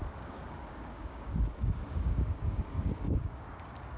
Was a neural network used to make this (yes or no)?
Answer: yes